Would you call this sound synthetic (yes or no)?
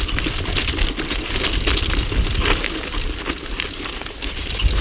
no